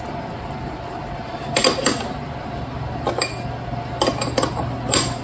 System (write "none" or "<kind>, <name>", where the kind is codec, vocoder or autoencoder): none